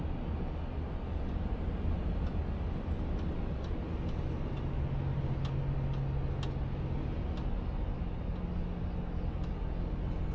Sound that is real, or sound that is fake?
real